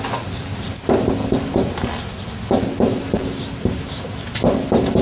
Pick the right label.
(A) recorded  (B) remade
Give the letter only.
A